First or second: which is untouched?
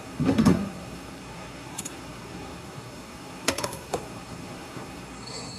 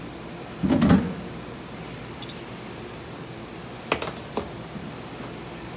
second